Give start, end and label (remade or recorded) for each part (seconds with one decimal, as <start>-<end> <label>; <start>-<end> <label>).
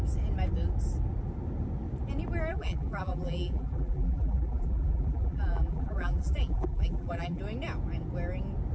0.0-2.5 recorded; 2.5-7.4 remade; 7.4-8.7 recorded